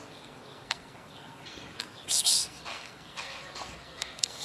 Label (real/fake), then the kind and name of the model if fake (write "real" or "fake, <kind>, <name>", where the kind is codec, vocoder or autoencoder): fake, codec, SNAC